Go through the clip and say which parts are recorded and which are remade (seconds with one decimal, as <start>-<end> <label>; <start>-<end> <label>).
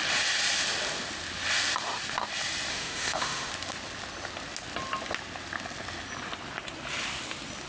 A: 0.0-2.7 recorded; 2.7-3.5 remade; 3.5-7.7 recorded